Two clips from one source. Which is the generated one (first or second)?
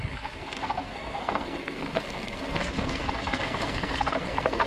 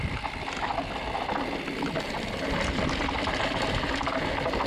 first